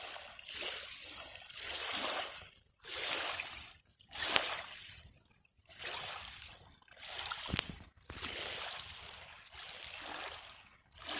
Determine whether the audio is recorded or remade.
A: recorded